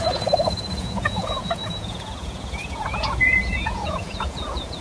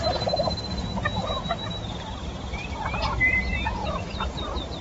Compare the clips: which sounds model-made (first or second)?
first